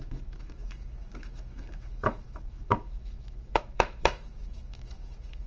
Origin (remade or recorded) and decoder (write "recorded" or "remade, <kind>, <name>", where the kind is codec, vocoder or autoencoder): remade, autoencoder, DAC-VAE